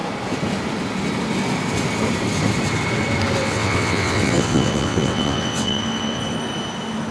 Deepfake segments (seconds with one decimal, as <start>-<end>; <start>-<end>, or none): 3.4-6.2